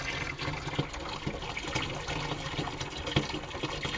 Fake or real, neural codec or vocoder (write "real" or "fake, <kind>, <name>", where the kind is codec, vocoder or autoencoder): real